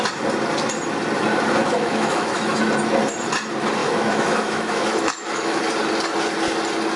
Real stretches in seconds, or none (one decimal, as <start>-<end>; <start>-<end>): 0.0-1.6; 2.6-3.8; 5.6-7.0

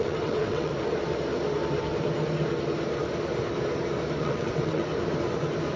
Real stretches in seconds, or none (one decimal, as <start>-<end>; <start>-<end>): 0.7-4.2; 4.8-5.8

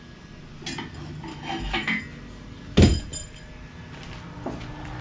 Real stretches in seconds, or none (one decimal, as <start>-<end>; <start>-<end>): 0.0-1.3; 2.0-5.0